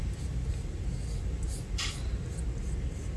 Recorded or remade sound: recorded